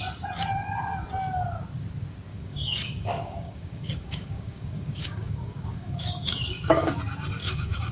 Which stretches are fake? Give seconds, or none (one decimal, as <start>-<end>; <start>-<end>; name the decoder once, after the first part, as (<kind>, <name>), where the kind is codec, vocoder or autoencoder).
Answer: 2.3-7.0 (codec, DAC); 7.4-7.9